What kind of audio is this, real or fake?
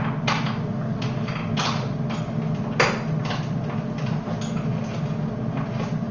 real